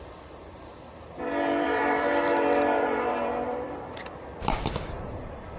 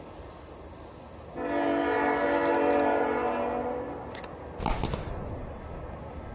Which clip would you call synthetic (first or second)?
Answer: first